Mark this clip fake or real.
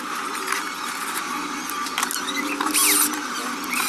real